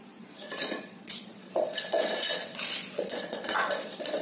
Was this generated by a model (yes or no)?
yes